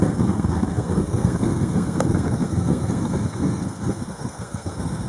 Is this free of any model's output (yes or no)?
no